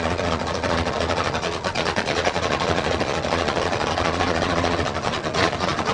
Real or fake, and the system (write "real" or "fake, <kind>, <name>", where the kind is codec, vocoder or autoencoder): fake, vocoder, Vocos